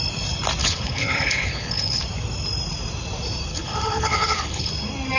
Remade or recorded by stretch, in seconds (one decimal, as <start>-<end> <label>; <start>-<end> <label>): 0.0-0.6 recorded; 0.6-2.0 remade; 2.0-3.5 recorded; 3.5-4.7 remade; 4.7-5.2 recorded

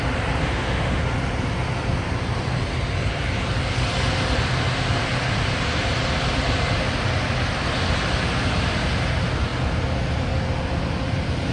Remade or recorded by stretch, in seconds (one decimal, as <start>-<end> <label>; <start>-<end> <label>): 0.0-0.4 recorded; 0.4-1.0 remade; 1.0-11.5 recorded